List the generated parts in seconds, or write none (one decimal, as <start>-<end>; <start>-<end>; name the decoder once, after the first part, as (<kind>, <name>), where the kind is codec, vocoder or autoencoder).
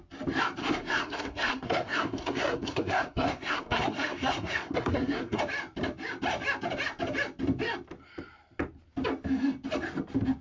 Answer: 0.6-5.4 (codec, SNAC)